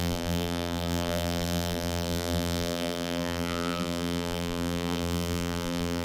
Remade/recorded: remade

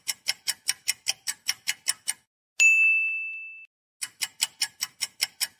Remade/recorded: recorded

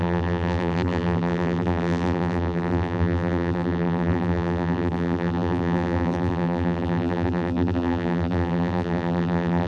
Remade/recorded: remade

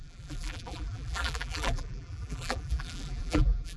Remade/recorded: remade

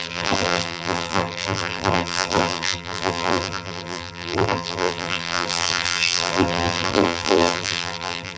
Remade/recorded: remade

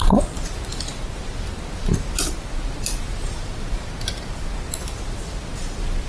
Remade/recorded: recorded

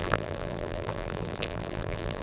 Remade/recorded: remade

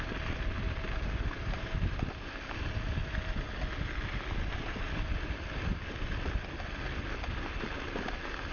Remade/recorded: recorded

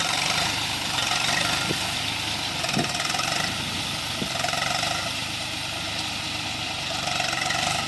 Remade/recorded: remade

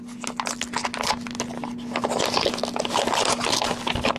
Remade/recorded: recorded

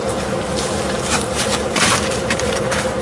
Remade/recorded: remade